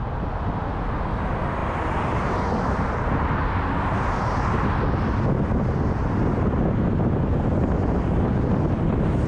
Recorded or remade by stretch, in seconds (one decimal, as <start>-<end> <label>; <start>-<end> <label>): 0.0-9.3 recorded